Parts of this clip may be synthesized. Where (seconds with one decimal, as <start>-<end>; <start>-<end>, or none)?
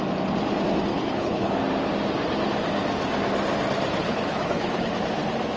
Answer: 0.9-1.6; 4.0-4.9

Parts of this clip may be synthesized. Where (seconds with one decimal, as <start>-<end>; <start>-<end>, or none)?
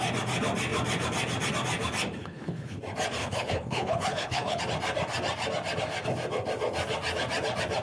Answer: 2.2-2.8; 3.2-4.6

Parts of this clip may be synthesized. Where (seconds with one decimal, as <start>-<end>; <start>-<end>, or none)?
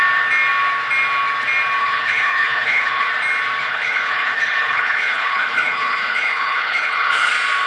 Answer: 1.8-3.1; 3.6-7.3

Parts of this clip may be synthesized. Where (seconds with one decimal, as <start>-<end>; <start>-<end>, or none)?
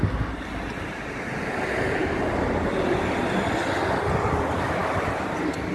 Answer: none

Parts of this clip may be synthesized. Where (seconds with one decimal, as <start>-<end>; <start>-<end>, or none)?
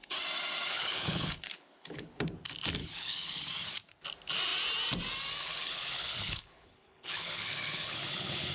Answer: 0.7-2.2; 2.8-3.5; 5.4-8.5